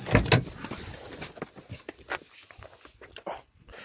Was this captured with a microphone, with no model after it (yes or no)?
yes